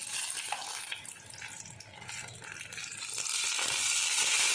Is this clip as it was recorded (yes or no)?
yes